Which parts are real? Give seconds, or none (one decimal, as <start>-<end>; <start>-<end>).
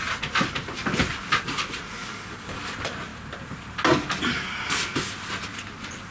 0.0-2.0; 2.6-6.1